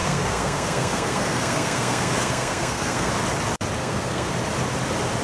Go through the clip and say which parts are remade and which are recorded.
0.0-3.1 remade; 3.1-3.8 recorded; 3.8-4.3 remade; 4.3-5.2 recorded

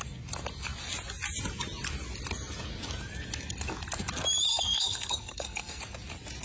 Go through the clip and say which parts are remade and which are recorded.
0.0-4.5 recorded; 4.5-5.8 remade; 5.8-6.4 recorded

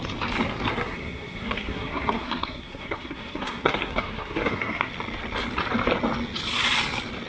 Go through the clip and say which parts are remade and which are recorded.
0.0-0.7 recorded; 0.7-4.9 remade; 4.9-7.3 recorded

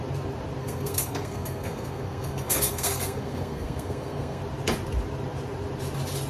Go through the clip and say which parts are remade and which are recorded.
0.0-0.6 recorded; 0.6-4.4 remade; 4.4-6.3 recorded